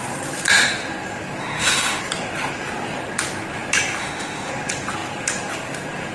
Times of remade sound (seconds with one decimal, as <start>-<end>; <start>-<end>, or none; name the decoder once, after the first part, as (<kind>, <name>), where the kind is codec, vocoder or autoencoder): 1.4-2.0 (autoencoder, DAC-VAE); 4.0-4.5